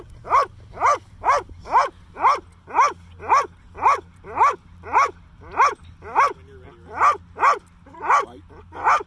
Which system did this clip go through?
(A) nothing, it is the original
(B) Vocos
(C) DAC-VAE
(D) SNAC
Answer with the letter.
A